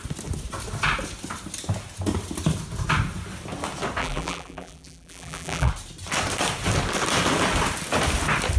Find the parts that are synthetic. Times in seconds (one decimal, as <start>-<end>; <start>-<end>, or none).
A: 4.0-5.7